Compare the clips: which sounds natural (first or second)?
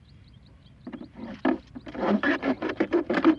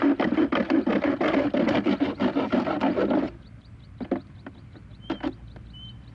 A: second